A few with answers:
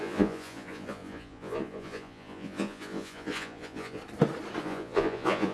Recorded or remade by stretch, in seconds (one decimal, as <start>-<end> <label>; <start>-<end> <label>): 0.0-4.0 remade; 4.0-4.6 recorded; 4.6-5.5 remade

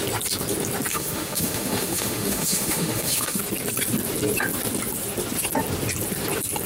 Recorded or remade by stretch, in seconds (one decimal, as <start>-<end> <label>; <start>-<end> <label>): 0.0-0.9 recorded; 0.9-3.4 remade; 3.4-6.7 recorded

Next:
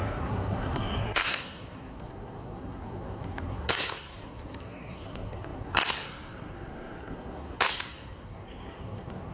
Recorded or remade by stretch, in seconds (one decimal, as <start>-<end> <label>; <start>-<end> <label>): 0.0-9.3 remade